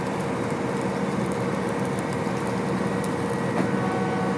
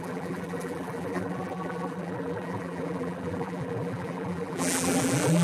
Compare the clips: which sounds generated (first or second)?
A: second